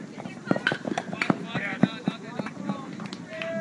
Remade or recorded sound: remade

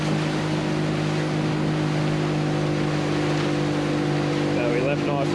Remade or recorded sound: recorded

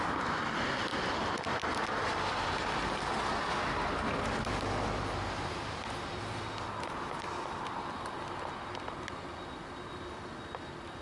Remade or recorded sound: recorded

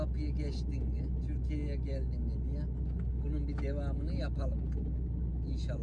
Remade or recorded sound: recorded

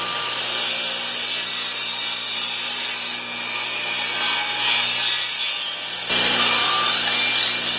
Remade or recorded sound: recorded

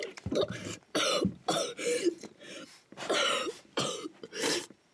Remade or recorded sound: remade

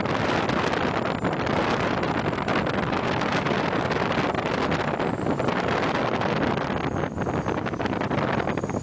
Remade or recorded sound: recorded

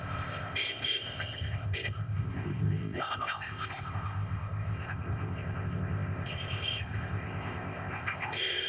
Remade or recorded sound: remade